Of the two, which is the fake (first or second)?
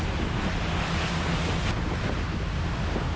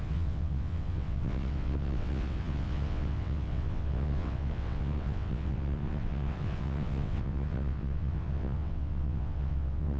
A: second